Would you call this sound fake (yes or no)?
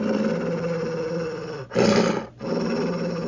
no